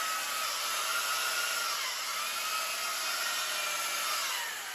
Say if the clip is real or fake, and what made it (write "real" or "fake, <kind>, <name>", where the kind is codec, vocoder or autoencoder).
real